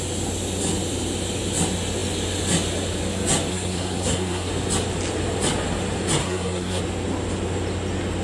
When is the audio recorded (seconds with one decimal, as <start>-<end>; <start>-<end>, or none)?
0.0-3.5; 4.5-6.2; 6.8-8.2